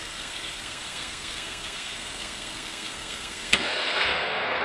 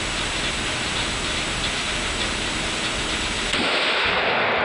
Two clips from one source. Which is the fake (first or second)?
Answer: first